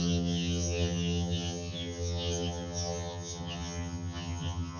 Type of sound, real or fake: fake